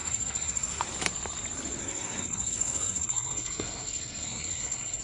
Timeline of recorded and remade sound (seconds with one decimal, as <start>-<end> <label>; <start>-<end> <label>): 0.0-0.8 remade; 0.8-1.8 recorded; 1.8-5.0 remade